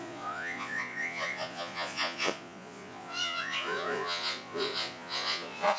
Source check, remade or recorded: remade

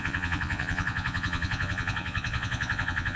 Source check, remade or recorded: remade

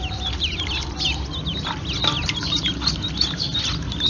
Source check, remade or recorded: recorded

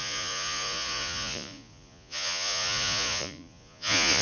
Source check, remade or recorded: remade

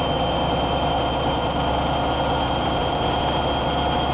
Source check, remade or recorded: recorded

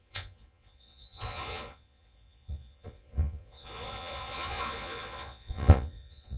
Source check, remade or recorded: remade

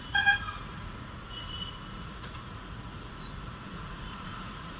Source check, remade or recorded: remade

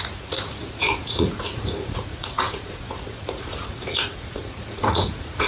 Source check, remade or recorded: remade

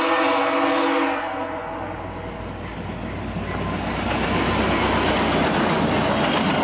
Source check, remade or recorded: recorded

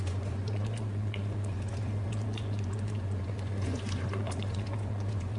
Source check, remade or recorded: remade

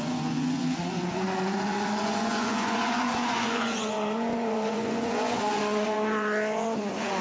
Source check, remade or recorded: remade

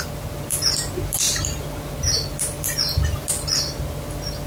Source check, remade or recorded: recorded